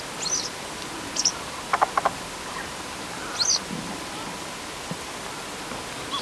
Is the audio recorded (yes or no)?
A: yes